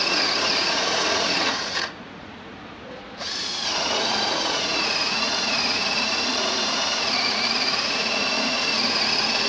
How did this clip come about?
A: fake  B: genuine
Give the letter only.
A